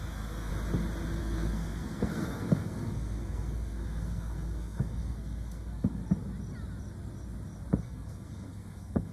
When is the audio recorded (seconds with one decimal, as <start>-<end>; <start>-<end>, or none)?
0.5-1.2; 6.0-7.8